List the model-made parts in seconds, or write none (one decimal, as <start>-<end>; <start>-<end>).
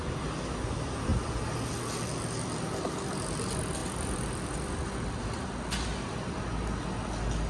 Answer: none